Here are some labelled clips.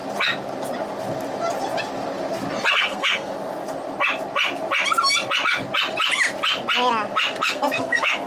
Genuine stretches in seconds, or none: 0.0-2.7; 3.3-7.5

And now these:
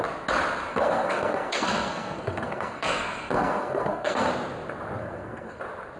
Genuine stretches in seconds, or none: 0.0-0.7; 4.3-5.0; 5.6-6.0